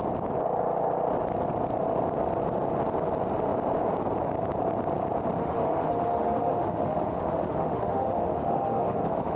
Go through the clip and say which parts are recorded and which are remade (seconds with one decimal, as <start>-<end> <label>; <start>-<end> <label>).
0.0-5.4 recorded; 5.4-9.4 remade